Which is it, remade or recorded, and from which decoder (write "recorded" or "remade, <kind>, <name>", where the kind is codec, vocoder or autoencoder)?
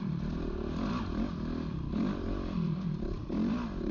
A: remade, vocoder, BigVGAN v2